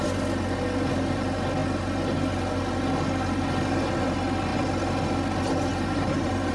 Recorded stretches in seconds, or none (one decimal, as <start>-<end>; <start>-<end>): 0.0-5.7